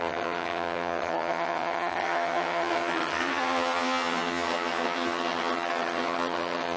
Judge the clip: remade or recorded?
remade